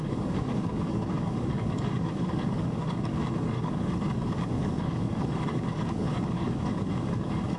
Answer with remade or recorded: remade